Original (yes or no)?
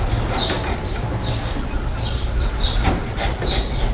yes